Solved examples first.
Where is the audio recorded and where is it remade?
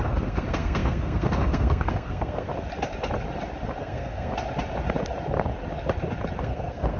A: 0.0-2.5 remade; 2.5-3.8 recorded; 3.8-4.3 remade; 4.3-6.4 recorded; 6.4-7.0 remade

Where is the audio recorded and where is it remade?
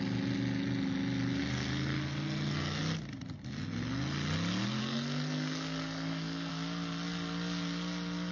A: 0.0-1.4 recorded; 1.4-2.8 remade; 2.8-4.8 recorded; 4.8-6.5 remade; 6.5-8.3 recorded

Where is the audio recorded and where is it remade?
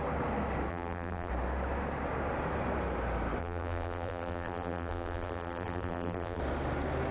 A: 0.0-0.7 recorded; 0.7-1.3 remade; 1.3-3.4 recorded; 3.4-6.4 remade; 6.4-7.1 recorded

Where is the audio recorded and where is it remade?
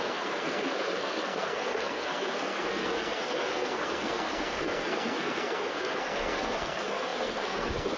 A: 0.0-8.0 remade